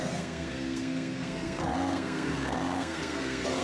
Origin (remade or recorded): remade